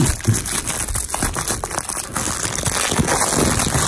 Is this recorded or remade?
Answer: recorded